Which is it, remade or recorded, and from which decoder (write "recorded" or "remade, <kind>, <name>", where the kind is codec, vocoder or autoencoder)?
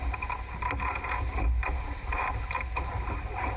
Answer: recorded